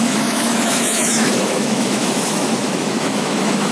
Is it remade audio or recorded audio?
remade